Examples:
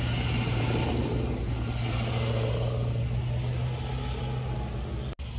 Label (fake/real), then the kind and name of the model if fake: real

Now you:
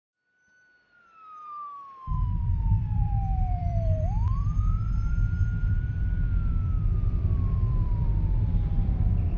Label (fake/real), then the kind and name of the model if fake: fake, vocoder, BigVGAN v2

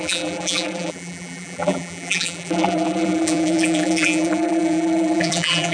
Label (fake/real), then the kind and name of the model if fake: fake, vocoder, BigVGAN v2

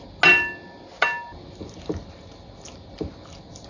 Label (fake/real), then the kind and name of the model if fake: real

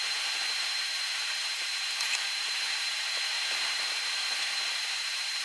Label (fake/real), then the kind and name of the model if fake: fake, vocoder, BigVGAN v2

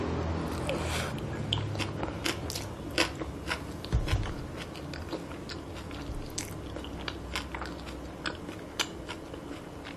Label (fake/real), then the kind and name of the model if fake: real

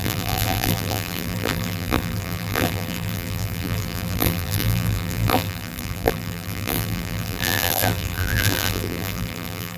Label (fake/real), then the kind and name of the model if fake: fake, vocoder, BigVGAN v2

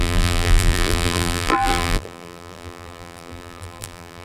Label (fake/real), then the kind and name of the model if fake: fake, vocoder, BigVGAN v2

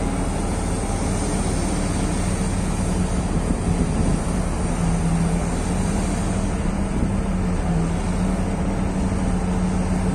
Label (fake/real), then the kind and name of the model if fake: real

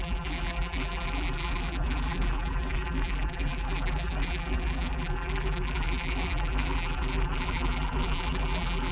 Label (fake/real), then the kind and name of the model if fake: fake, vocoder, BigVGAN v2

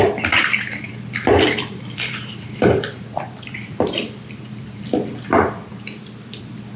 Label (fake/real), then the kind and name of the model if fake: fake, vocoder, BigVGAN v2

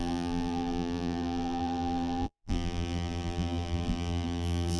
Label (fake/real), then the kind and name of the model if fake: fake, vocoder, BigVGAN v2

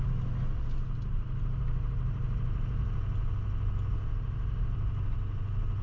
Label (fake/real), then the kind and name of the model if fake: real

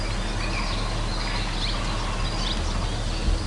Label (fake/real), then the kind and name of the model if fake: real